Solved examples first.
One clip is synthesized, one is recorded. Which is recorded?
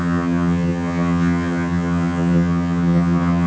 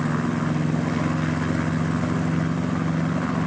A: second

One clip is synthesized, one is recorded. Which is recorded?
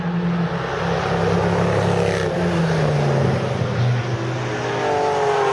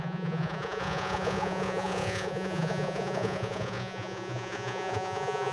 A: first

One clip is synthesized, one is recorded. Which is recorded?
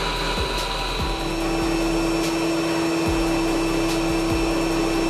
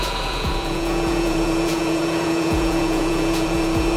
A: first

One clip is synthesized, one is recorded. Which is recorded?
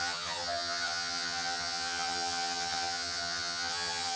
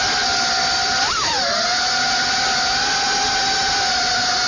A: second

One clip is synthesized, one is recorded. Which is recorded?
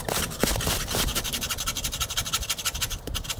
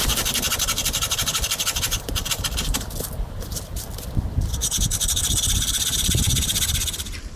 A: first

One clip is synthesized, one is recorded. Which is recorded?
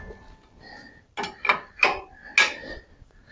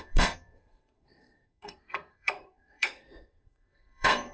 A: first